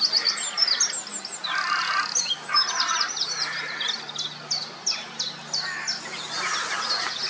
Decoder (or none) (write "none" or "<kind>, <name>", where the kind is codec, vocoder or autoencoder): none